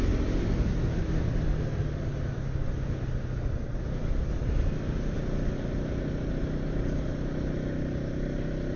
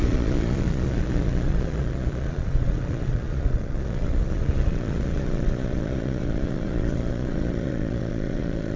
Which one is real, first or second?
first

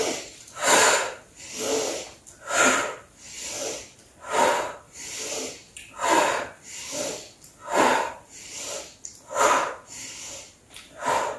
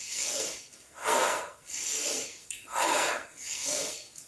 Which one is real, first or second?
first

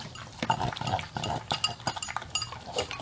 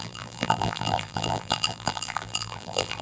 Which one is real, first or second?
first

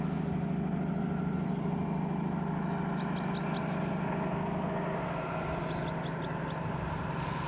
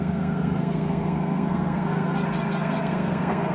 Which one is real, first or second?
first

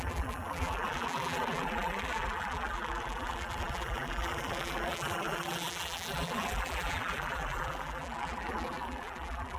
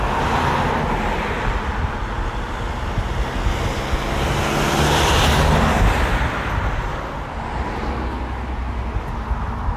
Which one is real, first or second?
second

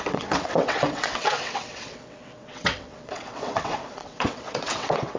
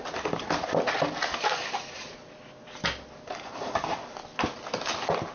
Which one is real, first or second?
second